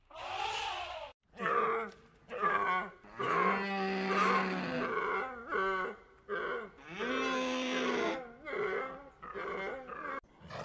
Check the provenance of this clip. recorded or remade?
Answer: recorded